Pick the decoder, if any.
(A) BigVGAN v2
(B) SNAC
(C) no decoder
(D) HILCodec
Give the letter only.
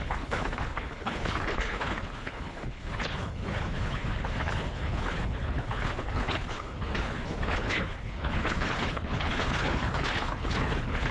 D